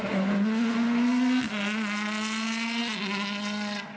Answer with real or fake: real